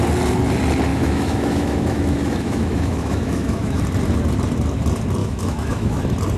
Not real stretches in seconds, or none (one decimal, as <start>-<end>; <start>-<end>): 0.9-3.8; 5.2-6.0